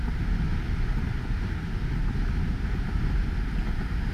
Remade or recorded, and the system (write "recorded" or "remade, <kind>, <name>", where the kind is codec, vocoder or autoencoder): recorded